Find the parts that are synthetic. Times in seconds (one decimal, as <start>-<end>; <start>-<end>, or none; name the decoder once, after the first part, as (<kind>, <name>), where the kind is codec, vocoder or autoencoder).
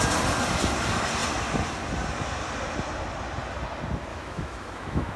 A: 4.1-5.2 (autoencoder, DAC-VAE)